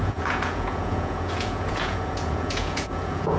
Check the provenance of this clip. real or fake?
fake